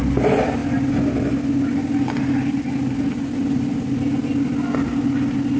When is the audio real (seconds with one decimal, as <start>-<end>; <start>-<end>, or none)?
0.0-5.6

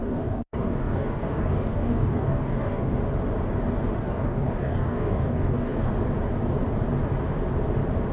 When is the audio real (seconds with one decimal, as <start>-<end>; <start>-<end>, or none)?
3.0-4.0; 5.9-8.1

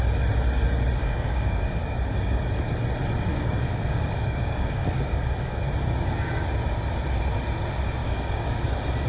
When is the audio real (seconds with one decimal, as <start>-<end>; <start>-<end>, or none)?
0.0-1.0; 2.5-3.3; 5.6-8.0; 8.7-9.1